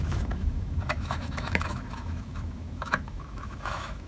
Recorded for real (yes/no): no